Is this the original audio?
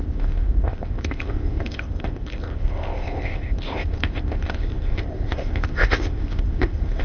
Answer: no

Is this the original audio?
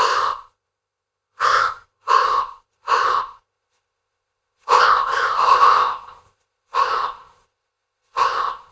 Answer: no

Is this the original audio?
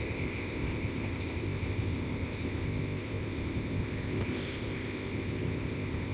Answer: no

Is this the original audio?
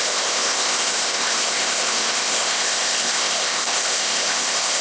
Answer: no